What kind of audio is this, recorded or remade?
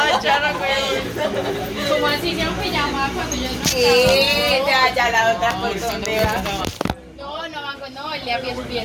recorded